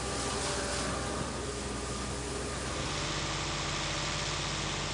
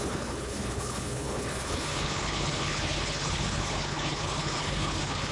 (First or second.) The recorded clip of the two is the first